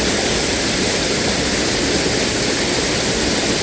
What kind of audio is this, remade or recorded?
remade